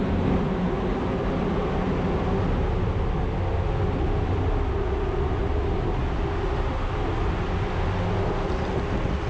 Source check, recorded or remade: recorded